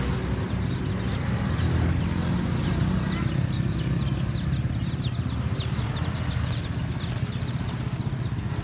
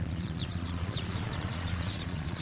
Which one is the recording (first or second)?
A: first